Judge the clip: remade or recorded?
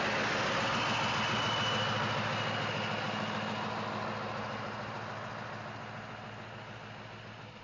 recorded